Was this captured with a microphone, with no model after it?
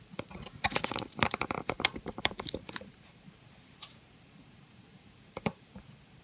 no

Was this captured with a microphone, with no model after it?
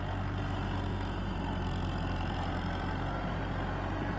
yes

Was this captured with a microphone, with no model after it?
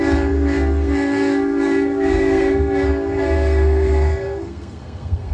no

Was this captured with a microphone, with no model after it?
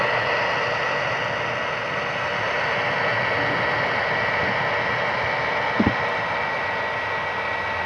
yes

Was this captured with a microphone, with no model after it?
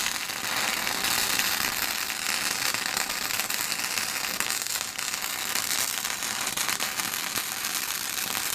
yes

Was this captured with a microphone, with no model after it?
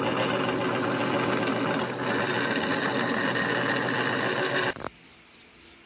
yes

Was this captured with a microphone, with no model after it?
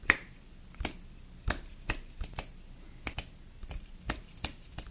yes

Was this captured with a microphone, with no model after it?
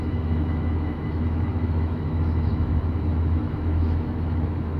no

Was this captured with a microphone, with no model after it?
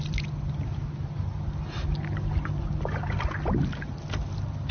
yes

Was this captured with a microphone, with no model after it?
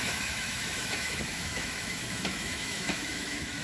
no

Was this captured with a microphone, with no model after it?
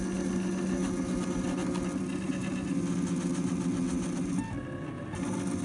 yes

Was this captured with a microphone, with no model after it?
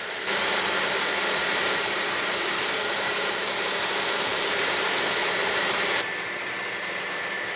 no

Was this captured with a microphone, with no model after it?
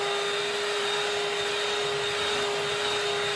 yes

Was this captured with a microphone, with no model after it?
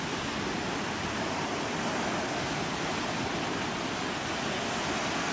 yes